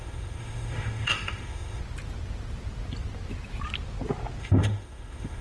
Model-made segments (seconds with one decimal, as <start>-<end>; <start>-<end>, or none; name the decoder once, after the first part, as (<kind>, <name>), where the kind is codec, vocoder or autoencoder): 0.0-1.8 (autoencoder, DAC-VAE); 4.4-5.4